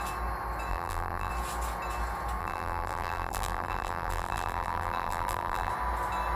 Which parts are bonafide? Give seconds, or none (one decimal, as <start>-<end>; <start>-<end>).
0.0-0.7; 1.3-2.4; 5.7-6.4